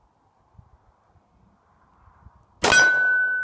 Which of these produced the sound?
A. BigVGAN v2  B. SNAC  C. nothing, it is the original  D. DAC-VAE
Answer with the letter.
C